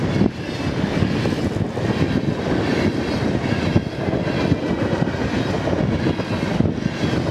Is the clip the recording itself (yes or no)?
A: yes